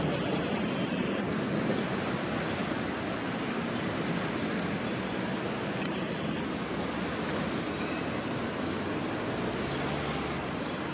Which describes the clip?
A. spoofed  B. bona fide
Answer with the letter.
B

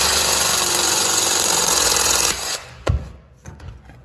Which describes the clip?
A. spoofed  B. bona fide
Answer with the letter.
A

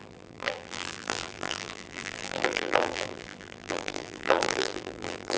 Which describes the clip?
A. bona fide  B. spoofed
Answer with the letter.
B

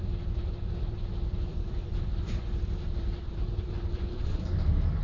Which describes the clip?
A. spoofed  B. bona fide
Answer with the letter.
A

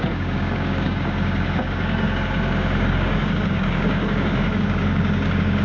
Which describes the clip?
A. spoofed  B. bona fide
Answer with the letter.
A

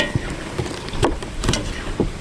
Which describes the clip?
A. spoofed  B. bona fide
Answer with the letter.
B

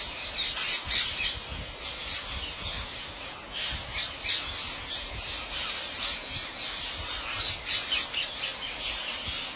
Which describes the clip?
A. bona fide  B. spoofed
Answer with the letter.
A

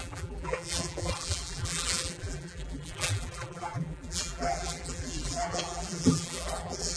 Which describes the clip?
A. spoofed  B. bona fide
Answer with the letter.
A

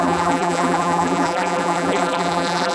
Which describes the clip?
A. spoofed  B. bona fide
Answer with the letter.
A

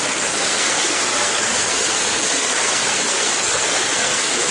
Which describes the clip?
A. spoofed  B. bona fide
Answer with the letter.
A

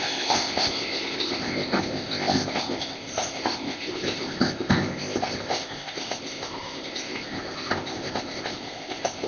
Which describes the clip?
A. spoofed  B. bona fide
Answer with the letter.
A